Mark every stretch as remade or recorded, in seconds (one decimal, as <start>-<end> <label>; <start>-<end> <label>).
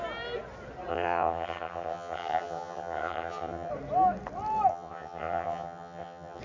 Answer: 0.0-0.9 recorded; 0.9-3.7 remade; 3.7-4.7 recorded; 4.7-6.4 remade